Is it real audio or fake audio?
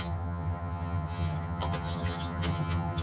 fake